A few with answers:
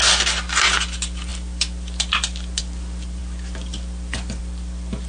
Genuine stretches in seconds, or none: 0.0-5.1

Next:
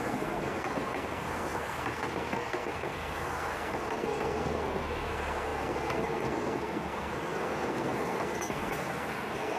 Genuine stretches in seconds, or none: none